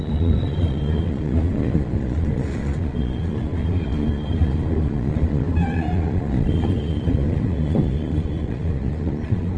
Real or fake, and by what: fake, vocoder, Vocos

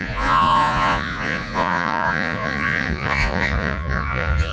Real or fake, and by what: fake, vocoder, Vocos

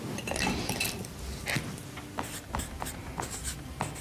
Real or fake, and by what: real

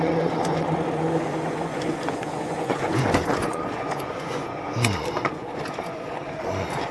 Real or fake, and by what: fake, vocoder, Vocos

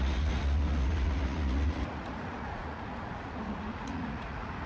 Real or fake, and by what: fake, vocoder, Vocos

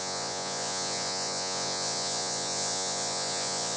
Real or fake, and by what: fake, vocoder, Vocos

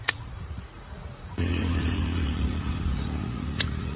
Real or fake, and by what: fake, vocoder, Vocos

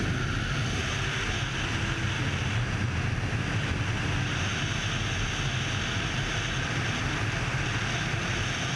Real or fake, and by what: real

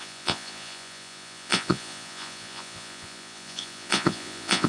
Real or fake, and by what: fake, vocoder, Vocos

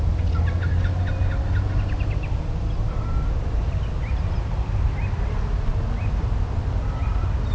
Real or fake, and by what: real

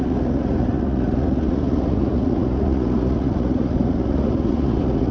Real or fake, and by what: fake, vocoder, Vocos